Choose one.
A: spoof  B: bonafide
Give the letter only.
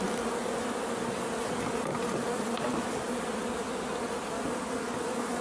B